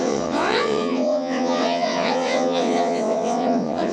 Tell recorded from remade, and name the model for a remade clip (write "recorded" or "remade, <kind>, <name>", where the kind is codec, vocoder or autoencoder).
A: remade, vocoder, WaveNeXt